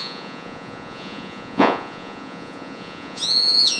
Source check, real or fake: fake